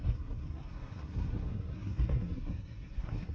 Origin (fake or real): fake